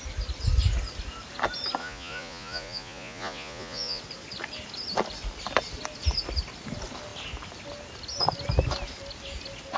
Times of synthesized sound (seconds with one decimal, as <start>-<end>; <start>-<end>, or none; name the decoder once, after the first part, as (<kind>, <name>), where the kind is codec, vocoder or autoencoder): 1.8-4.0 (vocoder, Vocos)